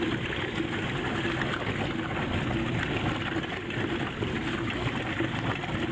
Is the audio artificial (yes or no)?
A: no